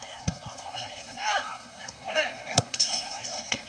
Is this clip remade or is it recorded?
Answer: remade